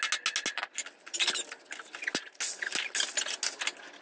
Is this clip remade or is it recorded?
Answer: recorded